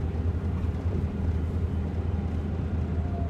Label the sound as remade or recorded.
recorded